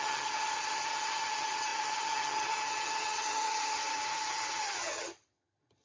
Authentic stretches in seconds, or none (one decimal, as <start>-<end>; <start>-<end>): none